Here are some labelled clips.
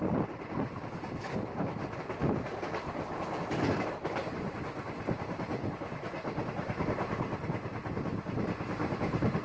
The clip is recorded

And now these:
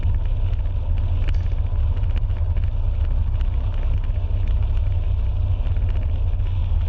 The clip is recorded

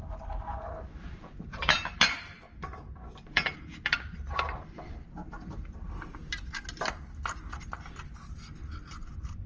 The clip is recorded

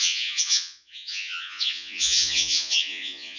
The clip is remade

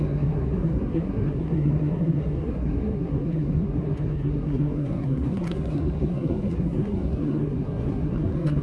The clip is remade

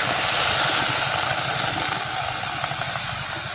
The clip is recorded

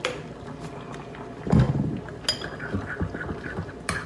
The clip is recorded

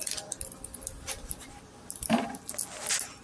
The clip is recorded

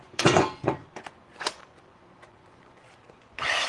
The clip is remade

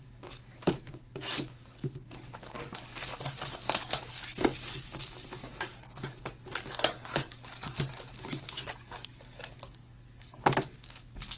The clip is remade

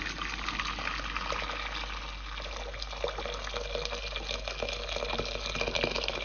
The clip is recorded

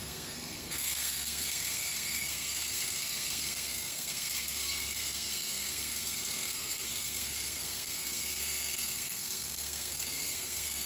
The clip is remade